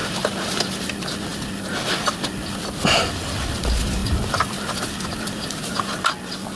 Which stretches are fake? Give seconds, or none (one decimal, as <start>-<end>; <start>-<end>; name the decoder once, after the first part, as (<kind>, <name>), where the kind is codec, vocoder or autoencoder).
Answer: 0.0-0.8 (vocoder, BigVGAN v2); 4.0-5.6